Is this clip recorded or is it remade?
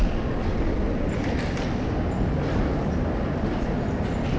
recorded